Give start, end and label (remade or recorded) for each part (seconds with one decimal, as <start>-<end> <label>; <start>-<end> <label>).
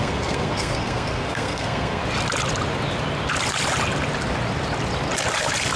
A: 0.0-2.0 remade; 2.0-5.8 recorded